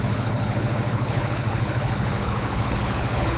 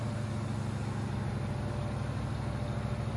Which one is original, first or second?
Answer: second